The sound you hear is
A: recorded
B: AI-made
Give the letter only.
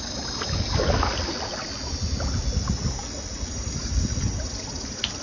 A